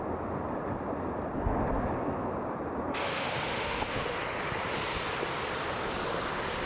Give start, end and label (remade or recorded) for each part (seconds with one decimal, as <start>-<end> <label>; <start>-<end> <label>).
0.0-2.9 recorded; 2.9-4.2 remade; 4.2-6.7 recorded